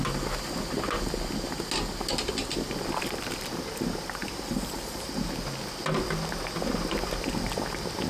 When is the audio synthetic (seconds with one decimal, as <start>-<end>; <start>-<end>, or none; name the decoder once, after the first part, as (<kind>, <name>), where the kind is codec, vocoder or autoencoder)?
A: 4.2-5.3 (vocoder, BigVGAN v2)

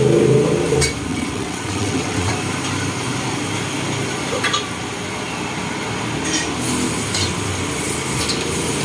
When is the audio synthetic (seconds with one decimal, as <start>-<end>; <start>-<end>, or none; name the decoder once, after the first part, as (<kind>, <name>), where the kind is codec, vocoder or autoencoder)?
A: 1.1-2.3 (vocoder, WaveNeXt)

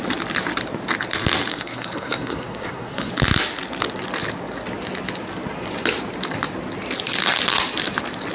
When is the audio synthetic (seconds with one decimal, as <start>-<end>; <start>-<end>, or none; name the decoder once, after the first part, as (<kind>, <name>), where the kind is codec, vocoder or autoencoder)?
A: 1.5-3.1 (codec, SNAC)

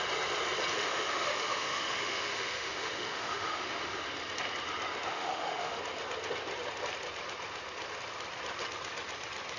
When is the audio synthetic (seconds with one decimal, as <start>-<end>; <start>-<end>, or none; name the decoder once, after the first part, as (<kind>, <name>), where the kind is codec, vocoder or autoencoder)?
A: 0.7-4.0 (autoencoder, DAC-VAE); 5.1-5.8

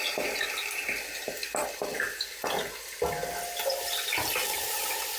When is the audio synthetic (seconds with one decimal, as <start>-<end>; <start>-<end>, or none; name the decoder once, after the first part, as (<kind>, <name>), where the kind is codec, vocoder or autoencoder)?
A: none

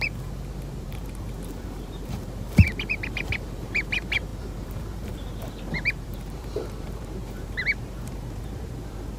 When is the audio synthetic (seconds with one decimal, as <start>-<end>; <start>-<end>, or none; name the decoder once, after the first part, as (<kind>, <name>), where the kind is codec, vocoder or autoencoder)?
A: 0.0-9.2 (vocoder, BigVGAN v2)